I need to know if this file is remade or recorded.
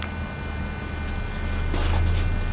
recorded